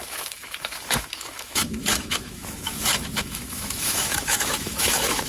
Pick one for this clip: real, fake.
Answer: fake